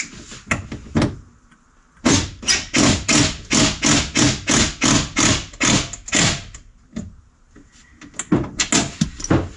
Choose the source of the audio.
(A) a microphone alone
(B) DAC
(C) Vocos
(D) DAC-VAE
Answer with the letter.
A